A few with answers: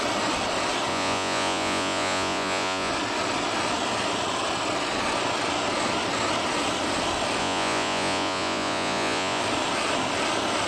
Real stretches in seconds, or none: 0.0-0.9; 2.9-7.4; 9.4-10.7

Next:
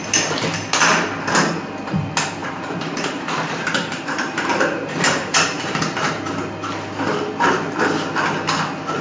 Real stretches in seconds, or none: 0.0-2.4; 6.3-9.0

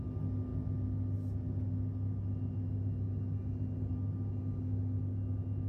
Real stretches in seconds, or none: 0.0-5.7

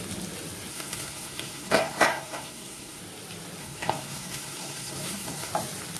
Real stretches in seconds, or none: 0.0-0.7; 3.0-3.6; 5.5-6.0

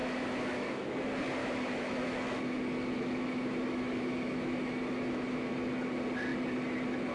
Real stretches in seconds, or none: 0.7-1.4; 5.5-7.1

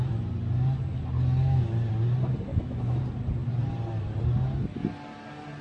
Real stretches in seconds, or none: 0.0-2.5; 3.0-5.6